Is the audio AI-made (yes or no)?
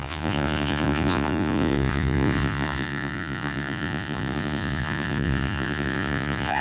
yes